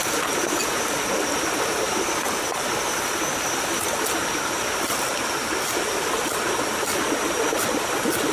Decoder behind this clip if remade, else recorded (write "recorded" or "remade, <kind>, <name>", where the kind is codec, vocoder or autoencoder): recorded